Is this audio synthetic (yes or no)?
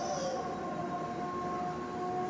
no